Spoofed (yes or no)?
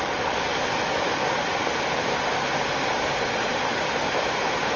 no